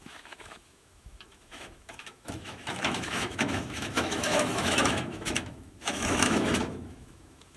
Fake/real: fake